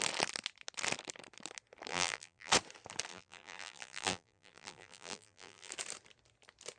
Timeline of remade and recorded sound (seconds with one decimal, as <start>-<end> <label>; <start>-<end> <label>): 0.0-1.9 recorded; 1.9-2.5 remade; 2.5-3.1 recorded; 3.1-5.7 remade; 5.7-6.8 recorded